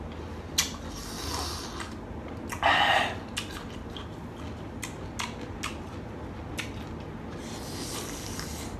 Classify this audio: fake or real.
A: real